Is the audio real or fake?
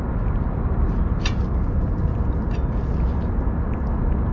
real